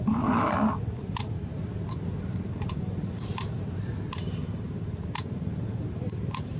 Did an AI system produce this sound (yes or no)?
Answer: no